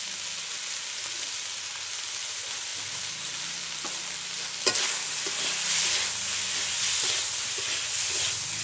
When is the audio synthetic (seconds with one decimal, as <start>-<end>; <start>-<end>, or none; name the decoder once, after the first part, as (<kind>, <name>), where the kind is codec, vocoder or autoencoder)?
none